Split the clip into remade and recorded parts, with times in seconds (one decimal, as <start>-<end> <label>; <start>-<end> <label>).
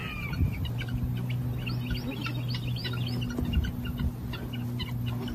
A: 0.0-1.0 remade; 1.0-5.3 recorded